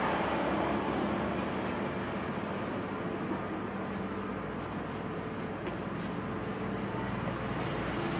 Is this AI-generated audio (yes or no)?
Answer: no